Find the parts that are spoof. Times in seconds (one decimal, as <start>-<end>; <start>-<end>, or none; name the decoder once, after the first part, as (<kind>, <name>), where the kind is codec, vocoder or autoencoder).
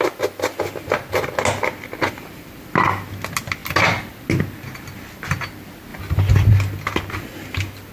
none